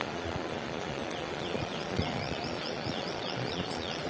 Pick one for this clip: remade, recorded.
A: remade